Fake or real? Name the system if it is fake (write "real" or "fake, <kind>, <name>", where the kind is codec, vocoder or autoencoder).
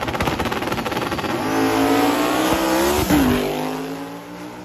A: real